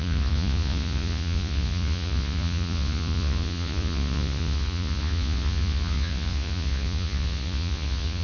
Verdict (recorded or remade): remade